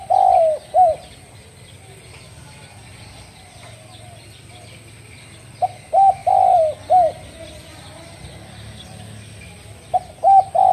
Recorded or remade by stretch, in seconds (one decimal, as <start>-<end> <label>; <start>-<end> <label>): 0.0-10.7 recorded